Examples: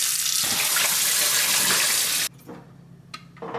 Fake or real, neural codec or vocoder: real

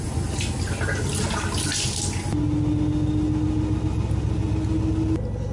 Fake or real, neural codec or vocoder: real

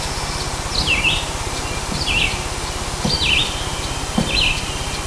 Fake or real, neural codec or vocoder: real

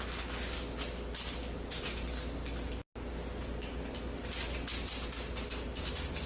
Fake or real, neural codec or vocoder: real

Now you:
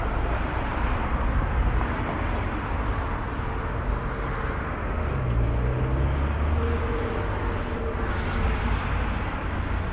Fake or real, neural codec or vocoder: real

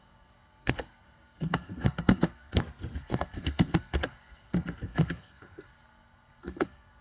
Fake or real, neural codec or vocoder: fake, codec, SNAC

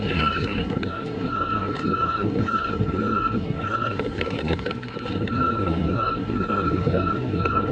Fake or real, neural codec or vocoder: fake, codec, SNAC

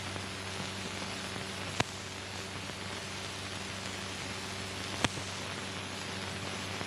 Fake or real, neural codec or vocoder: real